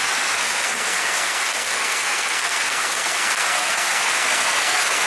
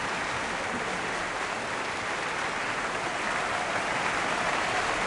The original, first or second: second